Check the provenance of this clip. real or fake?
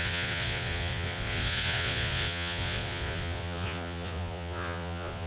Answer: fake